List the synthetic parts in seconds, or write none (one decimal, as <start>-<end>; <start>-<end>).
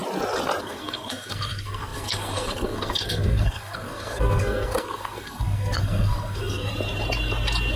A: 0.6-6.7